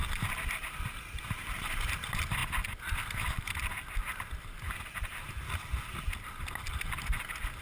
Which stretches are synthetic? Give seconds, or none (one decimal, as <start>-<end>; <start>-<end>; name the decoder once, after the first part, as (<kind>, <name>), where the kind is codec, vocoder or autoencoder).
0.0-1.2 (vocoder, BigVGAN v2)